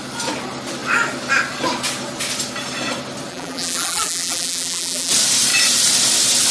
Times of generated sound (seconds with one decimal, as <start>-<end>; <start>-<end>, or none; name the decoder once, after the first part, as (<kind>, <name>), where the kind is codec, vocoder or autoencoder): 3.3-5.1 (vocoder, BigVGAN v2)